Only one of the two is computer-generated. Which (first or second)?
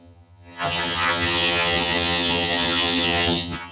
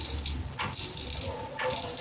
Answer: first